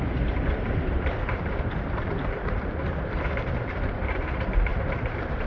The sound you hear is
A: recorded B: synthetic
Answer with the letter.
B